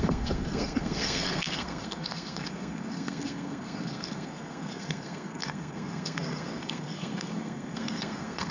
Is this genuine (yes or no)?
no